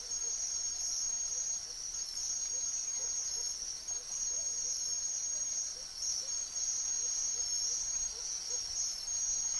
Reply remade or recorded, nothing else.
recorded